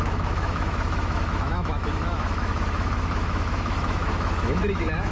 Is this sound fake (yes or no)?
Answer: yes